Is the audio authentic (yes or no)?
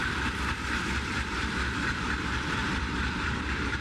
no